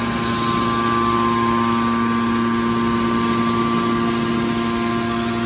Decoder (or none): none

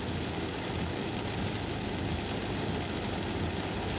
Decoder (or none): none